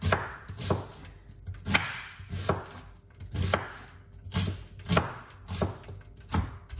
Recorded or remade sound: recorded